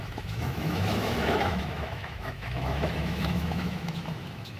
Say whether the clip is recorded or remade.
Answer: remade